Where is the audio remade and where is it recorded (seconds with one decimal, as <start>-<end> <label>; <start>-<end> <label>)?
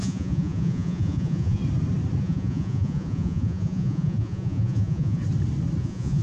0.0-1.6 remade; 1.6-2.2 recorded; 2.2-5.2 remade; 5.2-5.8 recorded; 5.8-6.2 remade